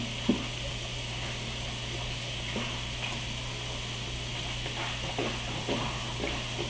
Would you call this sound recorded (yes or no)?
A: yes